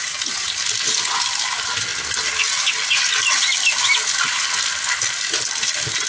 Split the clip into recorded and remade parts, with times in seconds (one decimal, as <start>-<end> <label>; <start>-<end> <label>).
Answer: 0.0-6.1 recorded